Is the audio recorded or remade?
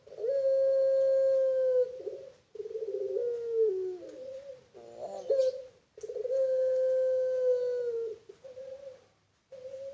recorded